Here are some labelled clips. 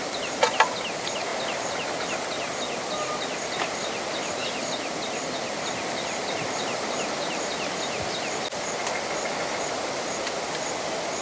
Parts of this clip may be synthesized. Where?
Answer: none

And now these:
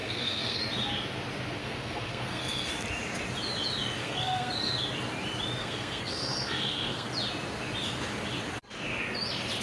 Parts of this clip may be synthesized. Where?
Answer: 0.0-0.6 (codec, SNAC); 1.6-2.7; 4.0-4.5; 5.6-7.1